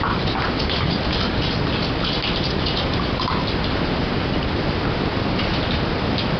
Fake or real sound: real